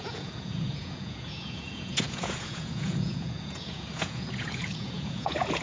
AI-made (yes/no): yes